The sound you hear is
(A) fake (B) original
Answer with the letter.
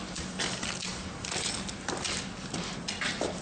B